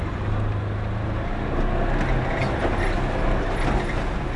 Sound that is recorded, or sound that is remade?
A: recorded